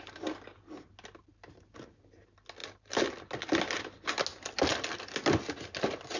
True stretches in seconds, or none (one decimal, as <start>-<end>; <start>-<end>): 0.0-6.2

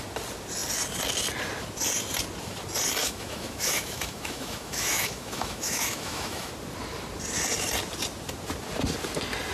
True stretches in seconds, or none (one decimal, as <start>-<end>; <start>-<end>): 0.0-3.0; 6.5-9.5